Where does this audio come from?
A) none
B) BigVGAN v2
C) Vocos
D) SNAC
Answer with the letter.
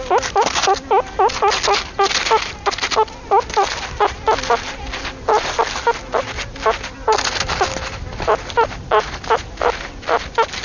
A